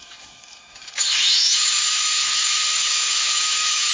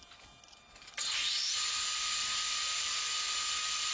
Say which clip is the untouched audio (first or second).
second